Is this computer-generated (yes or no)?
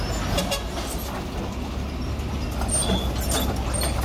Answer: no